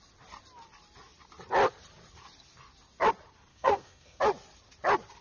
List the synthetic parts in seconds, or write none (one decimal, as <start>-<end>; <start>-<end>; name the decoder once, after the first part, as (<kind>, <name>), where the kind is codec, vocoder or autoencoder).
3.5-4.2 (codec, SNAC)